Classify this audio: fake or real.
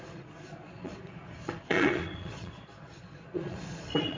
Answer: fake